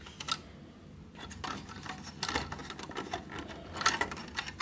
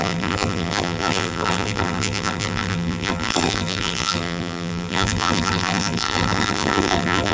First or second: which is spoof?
second